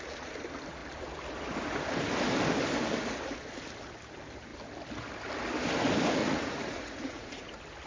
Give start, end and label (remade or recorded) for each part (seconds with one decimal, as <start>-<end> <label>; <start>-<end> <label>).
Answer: 0.0-6.2 recorded; 6.2-7.5 remade; 7.5-7.9 recorded